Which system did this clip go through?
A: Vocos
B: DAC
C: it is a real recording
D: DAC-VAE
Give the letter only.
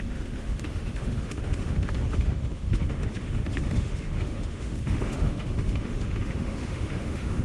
D